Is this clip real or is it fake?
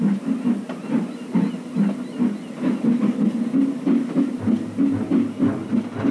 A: real